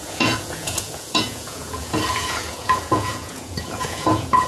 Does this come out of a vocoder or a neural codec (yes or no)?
yes